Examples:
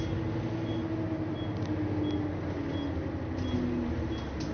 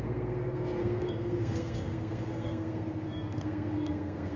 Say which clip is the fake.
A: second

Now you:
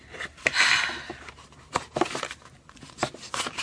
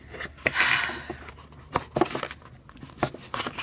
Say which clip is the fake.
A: first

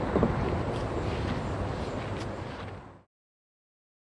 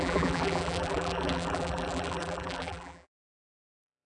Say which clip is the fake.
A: second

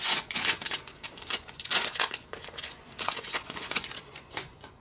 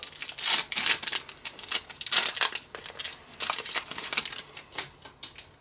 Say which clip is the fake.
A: first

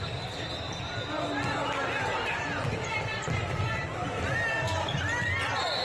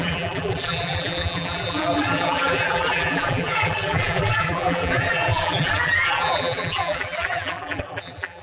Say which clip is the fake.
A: second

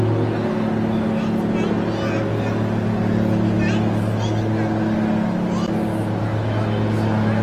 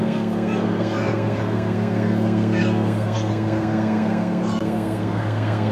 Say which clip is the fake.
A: second